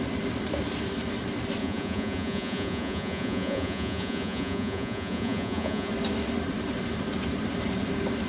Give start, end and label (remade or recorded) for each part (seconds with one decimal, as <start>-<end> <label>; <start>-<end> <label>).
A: 0.0-1.6 recorded; 1.6-5.9 remade; 5.9-8.3 recorded